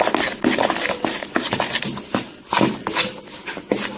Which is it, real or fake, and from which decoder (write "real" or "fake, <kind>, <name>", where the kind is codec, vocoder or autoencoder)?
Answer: real